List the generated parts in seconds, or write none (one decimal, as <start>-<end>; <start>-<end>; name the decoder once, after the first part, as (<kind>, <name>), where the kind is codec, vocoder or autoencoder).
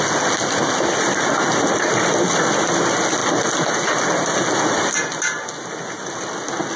none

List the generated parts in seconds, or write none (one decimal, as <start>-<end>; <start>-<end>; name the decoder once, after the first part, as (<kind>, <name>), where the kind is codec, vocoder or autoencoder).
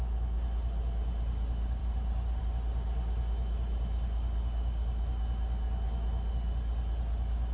1.8-2.4 (vocoder, BigVGAN v2)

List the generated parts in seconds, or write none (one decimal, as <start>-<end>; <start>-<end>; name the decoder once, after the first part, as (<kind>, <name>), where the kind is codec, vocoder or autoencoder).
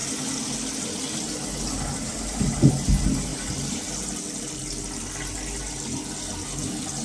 none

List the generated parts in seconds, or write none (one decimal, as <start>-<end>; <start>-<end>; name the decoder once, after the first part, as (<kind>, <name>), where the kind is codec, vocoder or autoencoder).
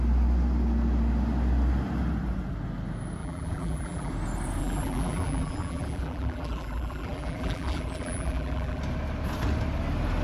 3.2-4.1 (vocoder, BigVGAN v2); 4.6-8.8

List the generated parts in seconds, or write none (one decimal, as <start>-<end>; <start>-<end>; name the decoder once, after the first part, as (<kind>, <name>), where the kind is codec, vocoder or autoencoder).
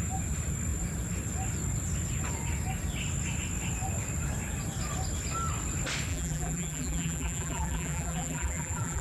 6.1-9.0 (vocoder, BigVGAN v2)